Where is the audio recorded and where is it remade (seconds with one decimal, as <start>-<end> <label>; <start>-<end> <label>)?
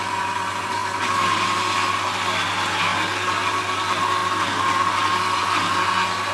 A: 0.0-6.3 recorded